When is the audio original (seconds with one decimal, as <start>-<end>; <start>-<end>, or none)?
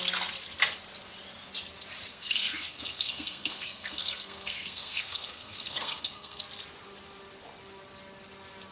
0.0-2.1; 6.4-8.7